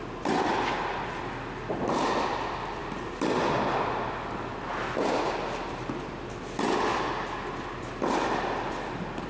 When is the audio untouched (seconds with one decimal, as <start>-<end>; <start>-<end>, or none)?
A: 0.0-9.3